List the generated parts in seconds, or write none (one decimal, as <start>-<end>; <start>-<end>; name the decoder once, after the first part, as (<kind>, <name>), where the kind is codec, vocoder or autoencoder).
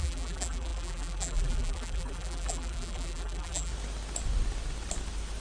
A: 0.0-3.7 (vocoder, BigVGAN v2)